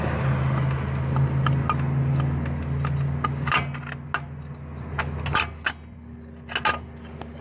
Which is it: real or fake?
real